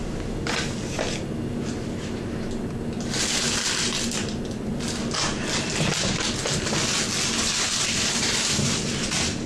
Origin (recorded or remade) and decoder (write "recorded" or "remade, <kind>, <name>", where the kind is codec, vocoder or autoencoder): recorded